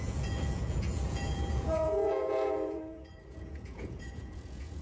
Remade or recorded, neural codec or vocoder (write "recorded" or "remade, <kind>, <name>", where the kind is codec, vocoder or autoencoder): remade, vocoder, Vocos